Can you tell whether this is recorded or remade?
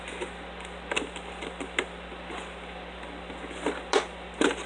recorded